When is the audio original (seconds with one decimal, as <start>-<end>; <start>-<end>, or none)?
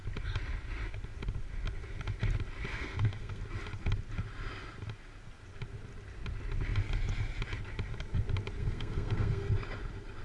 0.0-2.7; 3.4-8.6; 9.5-10.2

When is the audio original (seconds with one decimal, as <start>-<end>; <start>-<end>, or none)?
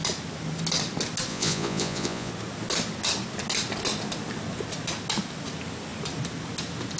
0.0-1.3; 2.3-7.0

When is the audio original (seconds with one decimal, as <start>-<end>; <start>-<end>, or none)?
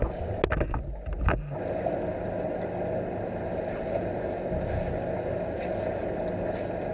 0.0-6.9